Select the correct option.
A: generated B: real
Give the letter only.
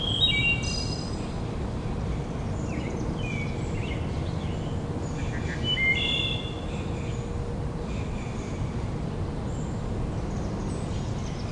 B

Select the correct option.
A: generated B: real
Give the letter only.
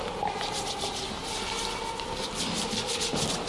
B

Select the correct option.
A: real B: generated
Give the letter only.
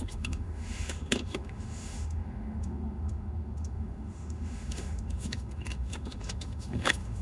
B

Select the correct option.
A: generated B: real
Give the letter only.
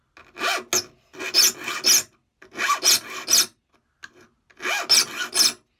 B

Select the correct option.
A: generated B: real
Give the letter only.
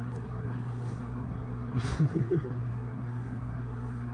A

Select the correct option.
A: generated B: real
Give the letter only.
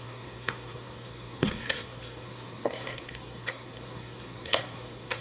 A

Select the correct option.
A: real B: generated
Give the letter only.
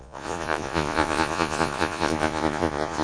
B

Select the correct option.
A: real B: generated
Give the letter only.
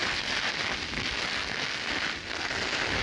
A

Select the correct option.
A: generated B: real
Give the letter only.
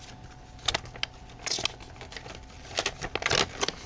B